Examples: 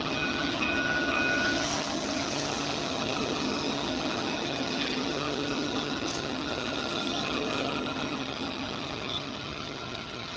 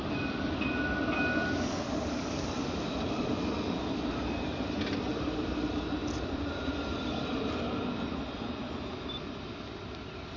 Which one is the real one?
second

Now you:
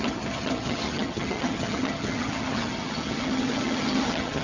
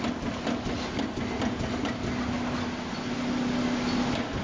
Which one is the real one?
second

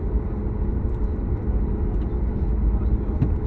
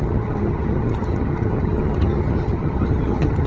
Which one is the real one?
first